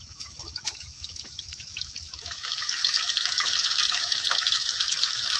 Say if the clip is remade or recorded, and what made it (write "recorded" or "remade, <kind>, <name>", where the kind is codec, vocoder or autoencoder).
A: remade, autoencoder, DAC-VAE